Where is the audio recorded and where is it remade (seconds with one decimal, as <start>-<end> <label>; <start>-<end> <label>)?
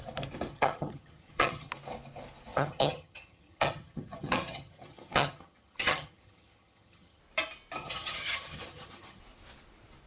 0.0-0.5 recorded; 0.5-1.7 remade; 1.7-2.5 recorded; 2.5-7.2 remade; 7.2-7.8 recorded; 7.8-9.2 remade; 9.2-10.1 recorded